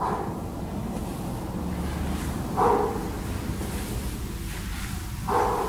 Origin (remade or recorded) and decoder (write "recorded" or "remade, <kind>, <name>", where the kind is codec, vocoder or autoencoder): recorded